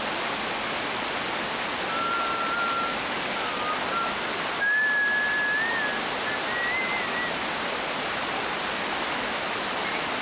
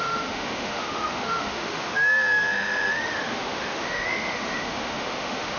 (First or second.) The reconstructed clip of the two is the second